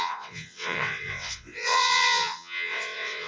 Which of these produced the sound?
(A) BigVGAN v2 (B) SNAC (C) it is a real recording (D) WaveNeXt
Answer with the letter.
D